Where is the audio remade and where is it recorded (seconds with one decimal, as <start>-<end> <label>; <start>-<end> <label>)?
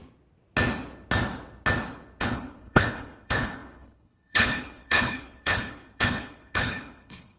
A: 0.0-2.2 recorded; 2.2-7.4 remade